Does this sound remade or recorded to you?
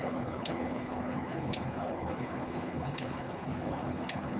remade